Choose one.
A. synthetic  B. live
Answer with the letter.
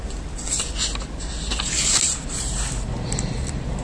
B